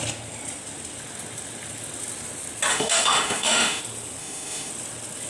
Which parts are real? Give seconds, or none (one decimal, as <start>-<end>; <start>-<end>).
0.0-2.7; 3.8-4.2; 4.7-5.3